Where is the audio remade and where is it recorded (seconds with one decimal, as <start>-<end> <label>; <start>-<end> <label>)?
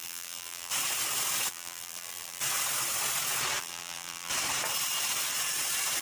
0.0-0.7 remade; 0.7-1.5 recorded; 1.5-2.4 remade; 2.4-3.6 recorded; 3.6-4.3 remade; 4.3-6.0 recorded